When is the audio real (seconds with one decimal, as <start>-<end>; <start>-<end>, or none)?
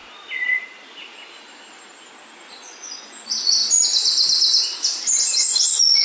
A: 0.0-2.5; 3.6-5.3